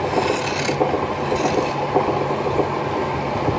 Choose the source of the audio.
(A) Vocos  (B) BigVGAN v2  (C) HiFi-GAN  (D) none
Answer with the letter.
D